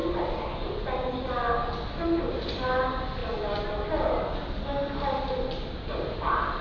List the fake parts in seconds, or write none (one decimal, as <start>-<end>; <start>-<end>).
none